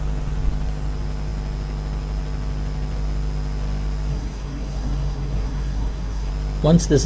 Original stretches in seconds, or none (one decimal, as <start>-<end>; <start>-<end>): 0.0-4.1; 6.3-7.1